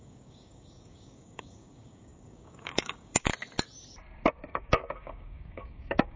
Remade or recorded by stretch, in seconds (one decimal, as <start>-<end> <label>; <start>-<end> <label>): 0.0-3.3 remade; 3.3-4.4 recorded; 4.4-6.2 remade